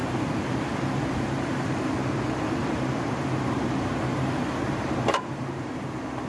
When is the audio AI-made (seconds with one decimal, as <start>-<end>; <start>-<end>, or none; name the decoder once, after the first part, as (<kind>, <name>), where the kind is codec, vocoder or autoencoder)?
0.0-1.8 (vocoder, BigVGAN v2); 2.6-5.7